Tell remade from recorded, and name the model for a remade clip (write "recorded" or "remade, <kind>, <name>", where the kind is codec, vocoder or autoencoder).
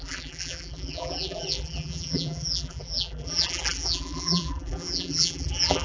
remade, vocoder, BigVGAN v2